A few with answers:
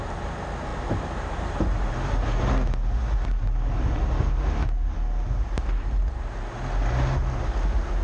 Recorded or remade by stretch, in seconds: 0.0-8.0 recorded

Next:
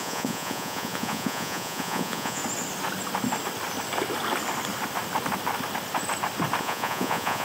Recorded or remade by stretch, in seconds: 0.0-2.4 remade; 2.4-6.6 recorded; 6.6-7.4 remade